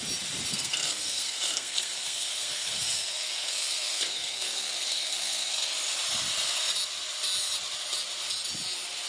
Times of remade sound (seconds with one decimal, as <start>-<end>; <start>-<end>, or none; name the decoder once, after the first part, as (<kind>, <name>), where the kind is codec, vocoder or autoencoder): 0.5-5.7 (codec, SNAC)